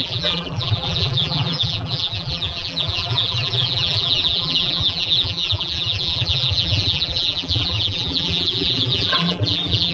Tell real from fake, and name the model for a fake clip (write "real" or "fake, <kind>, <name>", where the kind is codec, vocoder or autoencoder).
fake, vocoder, BigVGAN v2